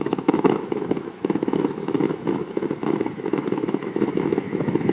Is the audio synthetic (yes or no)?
yes